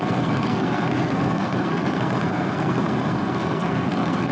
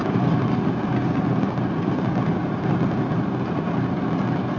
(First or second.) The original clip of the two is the second